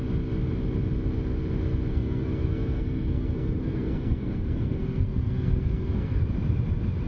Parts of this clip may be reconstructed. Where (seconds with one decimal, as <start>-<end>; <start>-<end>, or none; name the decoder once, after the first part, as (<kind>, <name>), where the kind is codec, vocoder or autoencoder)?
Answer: 1.9-6.2 (codec, SNAC)